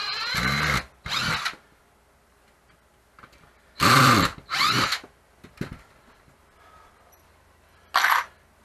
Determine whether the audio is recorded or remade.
recorded